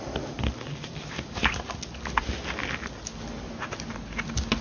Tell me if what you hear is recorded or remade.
recorded